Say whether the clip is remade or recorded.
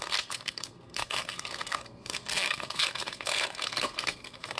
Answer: remade